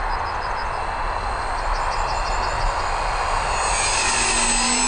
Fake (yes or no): no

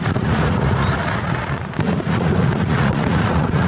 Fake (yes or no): yes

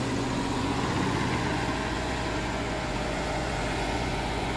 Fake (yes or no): yes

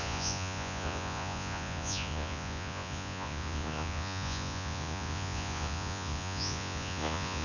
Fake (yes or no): yes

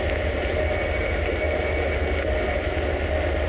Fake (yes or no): no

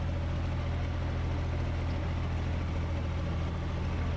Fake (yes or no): no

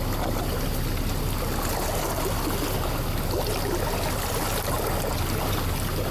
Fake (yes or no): no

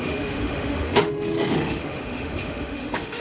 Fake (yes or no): yes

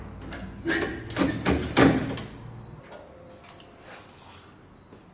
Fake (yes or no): no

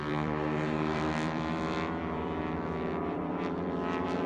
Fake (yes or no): yes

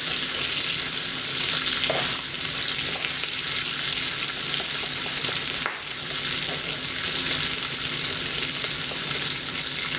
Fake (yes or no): no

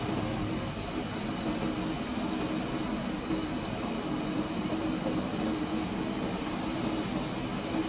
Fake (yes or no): no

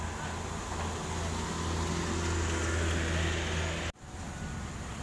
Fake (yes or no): no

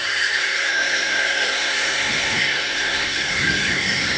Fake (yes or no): yes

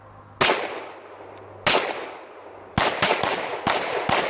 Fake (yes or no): no